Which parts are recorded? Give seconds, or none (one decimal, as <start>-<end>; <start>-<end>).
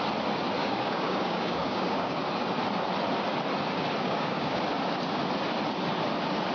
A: 0.0-0.6; 2.2-4.0; 4.6-6.5